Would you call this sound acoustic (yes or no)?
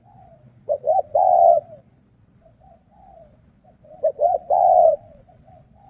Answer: no